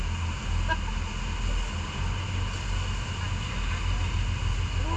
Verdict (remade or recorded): recorded